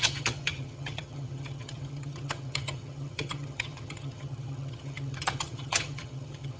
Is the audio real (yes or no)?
no